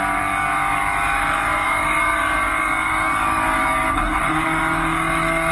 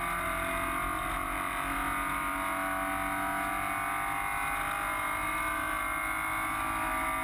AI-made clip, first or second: first